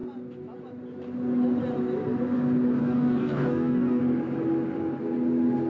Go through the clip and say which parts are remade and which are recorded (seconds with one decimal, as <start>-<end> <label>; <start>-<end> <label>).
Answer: 0.0-2.8 recorded; 2.8-4.0 remade; 4.0-5.7 recorded